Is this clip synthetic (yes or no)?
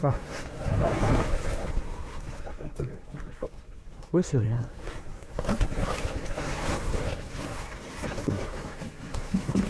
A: yes